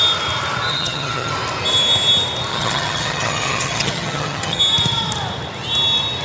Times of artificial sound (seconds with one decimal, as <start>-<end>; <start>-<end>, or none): 0.7-1.3; 2.5-4.6